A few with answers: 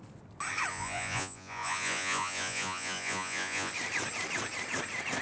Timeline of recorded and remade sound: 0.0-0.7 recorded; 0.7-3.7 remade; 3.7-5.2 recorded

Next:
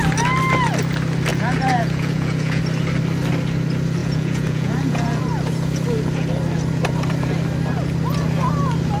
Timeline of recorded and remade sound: 0.0-1.3 recorded; 1.3-2.6 remade; 2.6-4.0 recorded; 4.0-5.2 remade; 5.2-9.0 recorded

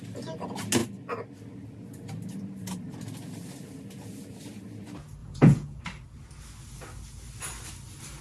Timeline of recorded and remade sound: 0.0-5.2 recorded; 5.2-5.8 remade; 5.8-8.2 recorded